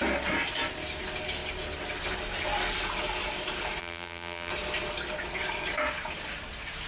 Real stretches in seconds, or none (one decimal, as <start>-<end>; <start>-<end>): 0.0-3.8; 4.5-6.9